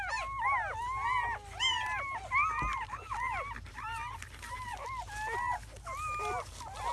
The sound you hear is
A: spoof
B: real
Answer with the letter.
B